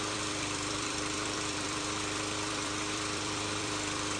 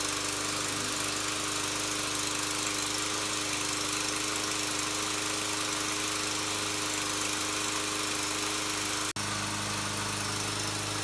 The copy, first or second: first